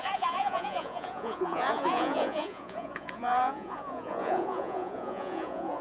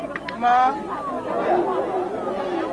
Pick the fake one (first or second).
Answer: first